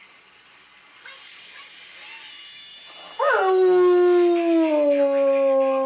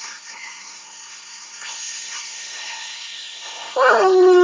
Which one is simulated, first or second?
second